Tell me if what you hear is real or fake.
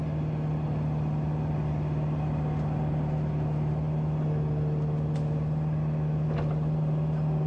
real